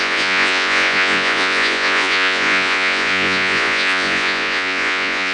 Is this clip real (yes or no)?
no